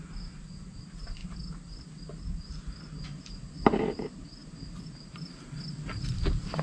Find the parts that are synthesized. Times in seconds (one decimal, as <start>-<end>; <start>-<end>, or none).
4.4-6.0